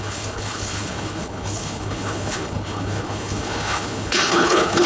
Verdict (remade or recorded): remade